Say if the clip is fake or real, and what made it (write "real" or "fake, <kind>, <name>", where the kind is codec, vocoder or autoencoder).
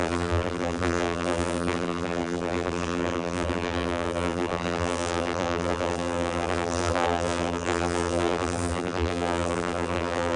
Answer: fake, vocoder, BigVGAN v2